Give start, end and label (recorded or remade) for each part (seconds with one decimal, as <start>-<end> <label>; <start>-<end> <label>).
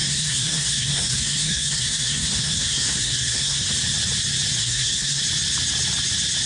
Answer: 0.0-3.7 remade; 3.7-4.6 recorded; 4.6-5.2 remade; 5.2-6.5 recorded